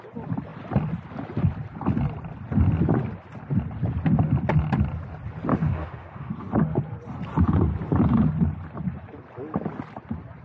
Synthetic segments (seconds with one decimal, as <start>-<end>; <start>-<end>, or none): 5.5-6.3